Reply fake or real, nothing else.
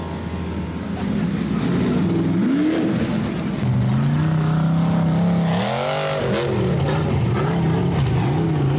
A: real